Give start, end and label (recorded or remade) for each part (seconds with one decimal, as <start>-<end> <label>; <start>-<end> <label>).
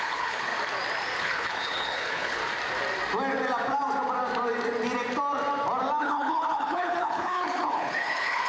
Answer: 0.0-0.5 remade; 0.5-1.2 recorded; 1.2-2.4 remade; 2.4-6.0 recorded; 6.0-8.5 remade